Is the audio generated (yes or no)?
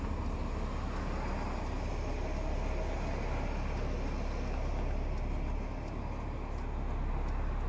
no